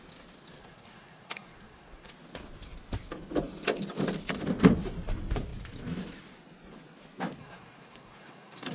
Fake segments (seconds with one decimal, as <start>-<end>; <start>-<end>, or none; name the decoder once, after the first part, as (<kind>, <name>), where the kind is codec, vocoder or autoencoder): 0.6-2.1 (codec, SNAC); 7.4-8.7